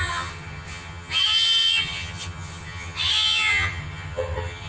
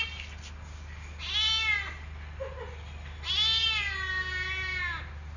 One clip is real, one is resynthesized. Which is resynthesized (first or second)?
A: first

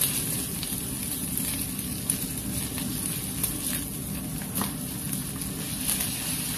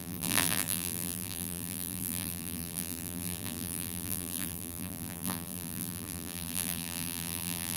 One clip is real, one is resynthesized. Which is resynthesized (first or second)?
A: second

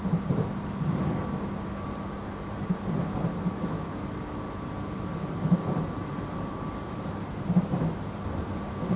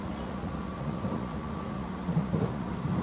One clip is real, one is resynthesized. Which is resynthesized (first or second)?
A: second